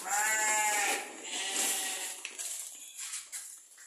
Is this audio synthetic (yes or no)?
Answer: no